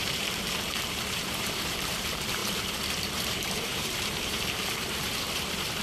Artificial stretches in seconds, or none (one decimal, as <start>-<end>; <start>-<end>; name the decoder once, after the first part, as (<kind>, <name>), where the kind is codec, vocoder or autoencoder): 0.0-2.4 (vocoder, BigVGAN v2); 3.0-5.8